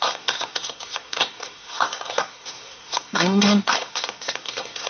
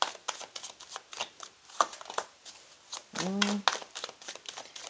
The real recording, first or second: second